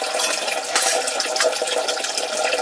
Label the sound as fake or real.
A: real